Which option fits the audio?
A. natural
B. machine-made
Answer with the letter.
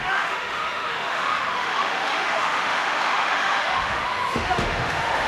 B